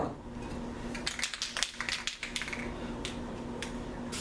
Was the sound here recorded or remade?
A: recorded